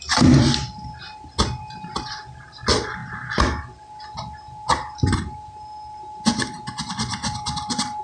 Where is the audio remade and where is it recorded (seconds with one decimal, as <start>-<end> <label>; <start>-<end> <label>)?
0.0-8.0 recorded